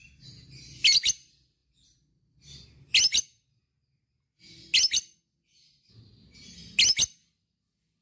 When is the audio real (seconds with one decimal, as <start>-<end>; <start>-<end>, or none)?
0.0-8.0